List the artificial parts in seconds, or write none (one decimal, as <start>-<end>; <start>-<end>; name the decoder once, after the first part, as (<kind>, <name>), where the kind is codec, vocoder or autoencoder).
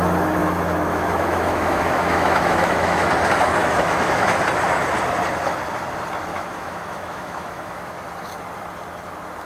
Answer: 0.4-3.1 (autoencoder, DAC-VAE); 3.6-4.4; 6.3-7.9